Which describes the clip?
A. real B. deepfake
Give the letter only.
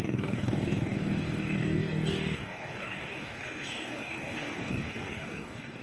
B